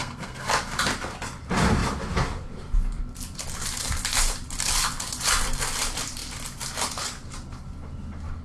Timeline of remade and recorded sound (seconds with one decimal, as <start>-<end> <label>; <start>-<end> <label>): 0.0-0.5 remade; 0.5-8.4 recorded